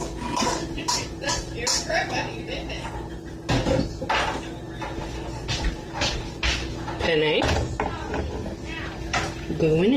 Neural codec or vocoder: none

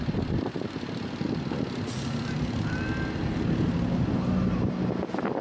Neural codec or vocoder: none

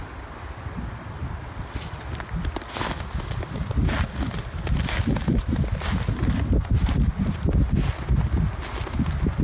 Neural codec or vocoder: none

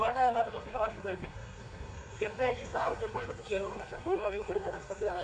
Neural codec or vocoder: codec, SNAC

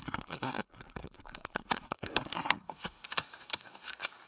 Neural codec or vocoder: codec, SNAC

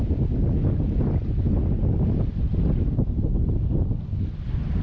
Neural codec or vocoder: none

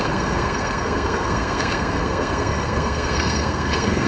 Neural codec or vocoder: codec, SNAC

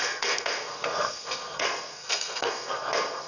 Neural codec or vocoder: codec, SNAC